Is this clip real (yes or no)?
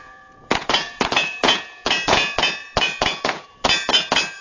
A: no